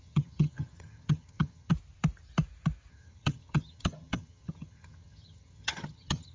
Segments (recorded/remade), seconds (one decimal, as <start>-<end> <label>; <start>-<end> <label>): 0.0-1.7 remade; 1.7-2.9 recorded; 2.9-6.3 remade